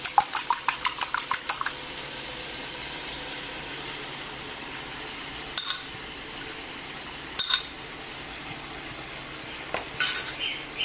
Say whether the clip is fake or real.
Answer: real